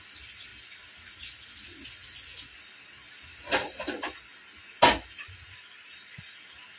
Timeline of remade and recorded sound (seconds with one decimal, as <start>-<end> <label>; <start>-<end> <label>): 0.0-6.8 recorded